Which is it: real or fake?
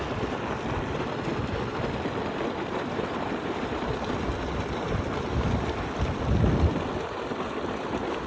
fake